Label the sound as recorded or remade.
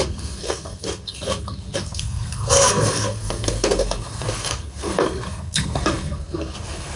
remade